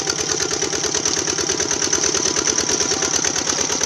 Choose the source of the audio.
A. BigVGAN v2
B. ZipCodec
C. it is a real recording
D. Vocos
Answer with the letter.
C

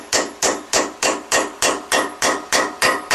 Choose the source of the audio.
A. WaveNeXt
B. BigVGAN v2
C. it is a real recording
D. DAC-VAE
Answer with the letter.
B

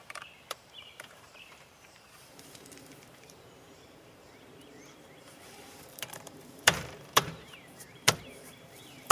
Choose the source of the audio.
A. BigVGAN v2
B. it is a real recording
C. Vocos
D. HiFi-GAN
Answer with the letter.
A